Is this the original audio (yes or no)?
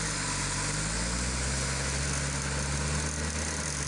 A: yes